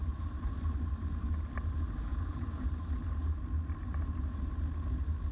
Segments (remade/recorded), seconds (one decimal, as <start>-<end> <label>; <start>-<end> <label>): 0.0-3.2 remade; 3.2-3.8 recorded; 3.8-4.5 remade; 4.5-5.3 recorded